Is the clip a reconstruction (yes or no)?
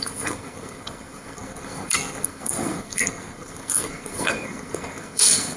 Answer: yes